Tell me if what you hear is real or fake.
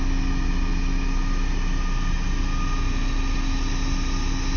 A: real